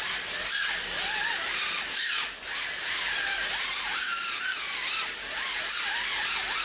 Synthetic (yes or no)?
no